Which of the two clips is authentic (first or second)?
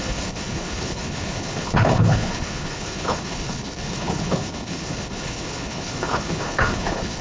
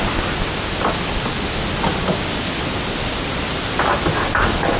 second